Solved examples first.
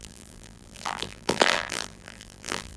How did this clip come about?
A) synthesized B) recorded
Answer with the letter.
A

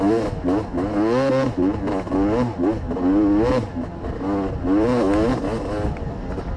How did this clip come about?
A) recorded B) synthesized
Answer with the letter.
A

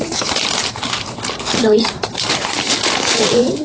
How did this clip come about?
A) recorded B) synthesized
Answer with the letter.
B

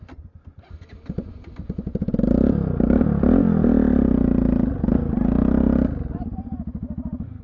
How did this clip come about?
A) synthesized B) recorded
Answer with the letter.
B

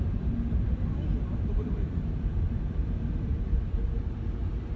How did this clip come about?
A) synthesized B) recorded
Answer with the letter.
A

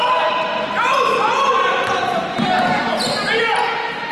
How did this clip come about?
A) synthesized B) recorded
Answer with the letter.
B